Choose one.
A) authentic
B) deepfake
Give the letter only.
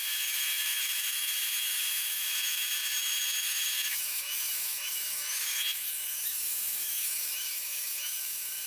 B